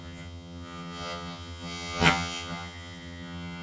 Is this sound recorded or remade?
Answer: remade